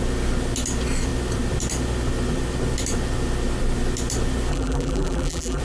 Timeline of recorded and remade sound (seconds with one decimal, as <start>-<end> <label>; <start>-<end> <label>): 0.0-4.5 recorded; 4.5-5.6 remade